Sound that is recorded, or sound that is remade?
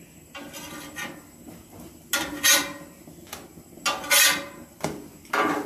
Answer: recorded